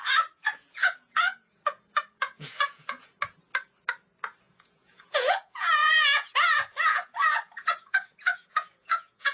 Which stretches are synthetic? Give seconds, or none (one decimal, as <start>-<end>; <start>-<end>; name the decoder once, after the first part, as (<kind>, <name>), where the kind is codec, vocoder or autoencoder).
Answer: 0.0-3.1 (vocoder, Vocos); 4.4-9.3